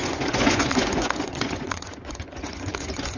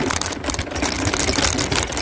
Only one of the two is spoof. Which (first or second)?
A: first